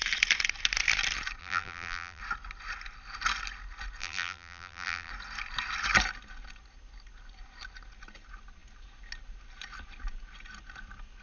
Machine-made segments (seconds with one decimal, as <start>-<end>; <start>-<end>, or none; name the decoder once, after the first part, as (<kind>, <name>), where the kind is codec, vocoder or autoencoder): 1.4-2.2 (vocoder, BigVGAN v2); 4.0-5.1